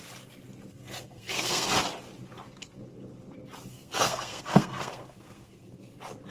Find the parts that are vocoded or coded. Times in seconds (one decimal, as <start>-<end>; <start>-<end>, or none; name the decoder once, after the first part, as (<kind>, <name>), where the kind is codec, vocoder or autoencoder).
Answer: 0.7-1.7 (codec, SNAC); 3.7-5.7